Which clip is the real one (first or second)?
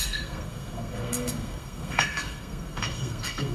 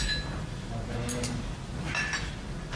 second